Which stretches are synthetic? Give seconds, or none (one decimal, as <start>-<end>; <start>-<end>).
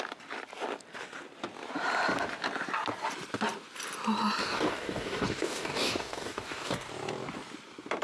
4.4-6.9